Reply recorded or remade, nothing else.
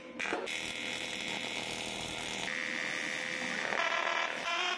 recorded